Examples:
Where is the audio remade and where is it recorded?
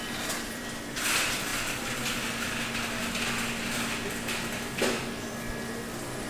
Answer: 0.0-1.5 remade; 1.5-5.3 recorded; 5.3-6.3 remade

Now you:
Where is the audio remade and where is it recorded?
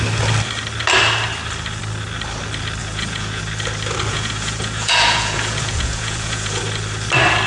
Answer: 0.0-2.8 recorded; 2.8-3.4 remade; 3.4-4.1 recorded; 4.1-6.6 remade; 6.6-7.5 recorded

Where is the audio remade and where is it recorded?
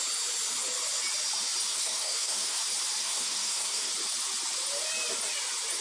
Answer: 0.0-1.7 recorded; 1.7-2.6 remade; 2.6-3.0 recorded; 3.0-3.9 remade; 3.9-5.8 recorded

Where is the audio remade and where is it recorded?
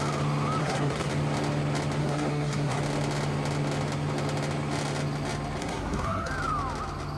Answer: 0.0-0.6 recorded; 0.6-1.1 remade; 1.1-2.0 recorded; 2.0-2.8 remade; 2.8-5.6 recorded; 5.6-6.3 remade; 6.3-7.2 recorded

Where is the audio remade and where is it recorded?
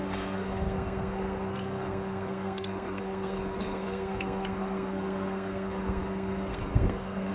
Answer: 0.0-7.3 remade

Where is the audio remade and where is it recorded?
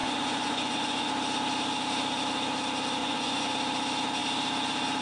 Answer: 0.0-1.1 remade; 1.1-3.0 recorded; 3.0-3.5 remade; 3.5-5.0 recorded